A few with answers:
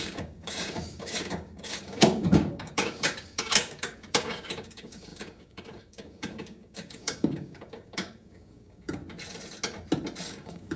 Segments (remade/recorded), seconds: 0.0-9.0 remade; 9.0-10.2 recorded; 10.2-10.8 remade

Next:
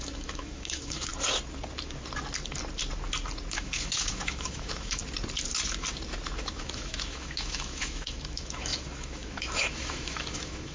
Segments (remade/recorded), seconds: 0.0-1.1 remade; 1.1-3.5 recorded; 3.5-5.0 remade; 5.0-6.4 recorded; 6.4-10.7 remade

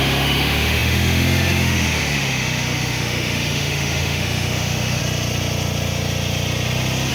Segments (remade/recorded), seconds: 0.0-5.0 remade; 5.0-7.1 recorded

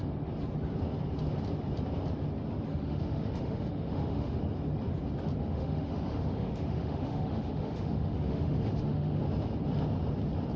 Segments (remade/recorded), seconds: 0.0-2.7 recorded; 2.7-4.4 remade; 4.4-5.4 recorded; 5.4-9.2 remade; 9.2-10.6 recorded